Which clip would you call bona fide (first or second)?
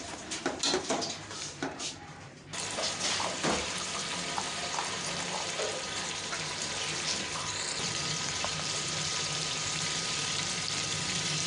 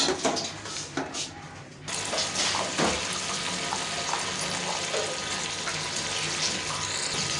second